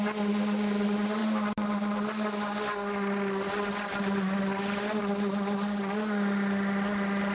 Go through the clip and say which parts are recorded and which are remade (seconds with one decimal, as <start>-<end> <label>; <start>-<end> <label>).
0.0-7.3 recorded

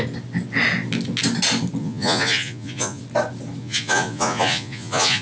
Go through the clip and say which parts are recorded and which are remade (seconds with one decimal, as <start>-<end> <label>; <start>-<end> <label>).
0.0-1.8 recorded; 1.8-3.0 remade; 3.0-3.6 recorded; 3.6-5.2 remade

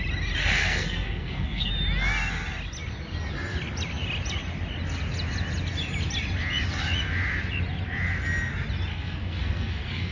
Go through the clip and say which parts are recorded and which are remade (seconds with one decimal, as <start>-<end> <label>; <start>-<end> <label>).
0.0-0.4 recorded; 0.4-1.7 remade; 1.7-8.9 recorded; 8.9-10.1 remade

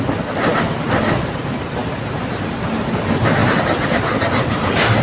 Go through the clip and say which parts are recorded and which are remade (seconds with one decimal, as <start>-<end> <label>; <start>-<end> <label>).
0.0-0.5 recorded; 0.5-1.4 remade; 1.4-3.4 recorded; 3.4-5.0 remade

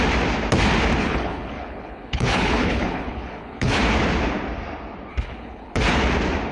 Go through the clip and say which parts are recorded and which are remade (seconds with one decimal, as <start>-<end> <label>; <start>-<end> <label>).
0.0-1.0 recorded; 1.0-3.8 remade; 3.8-5.1 recorded; 5.1-5.8 remade; 5.8-6.5 recorded

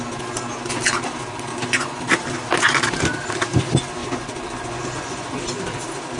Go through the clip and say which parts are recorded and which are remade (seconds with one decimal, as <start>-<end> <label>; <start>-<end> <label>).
0.0-1.5 recorded; 1.5-2.0 remade; 2.0-4.0 recorded; 4.0-5.4 remade; 5.4-6.2 recorded

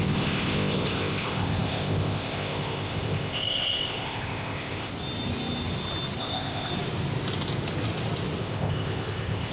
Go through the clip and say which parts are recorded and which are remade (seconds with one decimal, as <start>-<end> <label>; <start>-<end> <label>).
0.0-4.9 remade; 4.9-6.2 recorded; 6.2-6.7 remade; 6.7-8.4 recorded; 8.4-9.5 remade